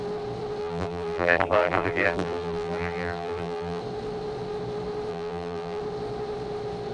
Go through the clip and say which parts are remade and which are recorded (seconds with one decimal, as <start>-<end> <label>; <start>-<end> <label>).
0.0-0.6 recorded; 0.6-3.8 remade; 3.8-5.1 recorded; 5.1-5.8 remade; 5.8-6.9 recorded